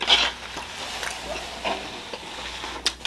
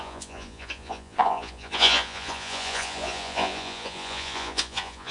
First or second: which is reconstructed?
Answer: second